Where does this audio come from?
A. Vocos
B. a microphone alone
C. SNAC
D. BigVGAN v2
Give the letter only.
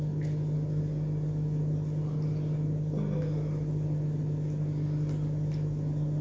B